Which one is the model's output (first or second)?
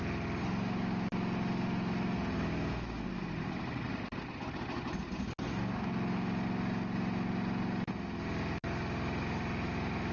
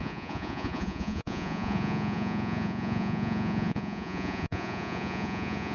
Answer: second